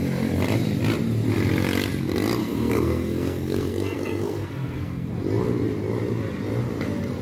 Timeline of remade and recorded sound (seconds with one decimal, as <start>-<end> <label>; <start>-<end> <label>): 0.0-2.4 recorded; 2.4-5.1 remade; 5.1-7.2 recorded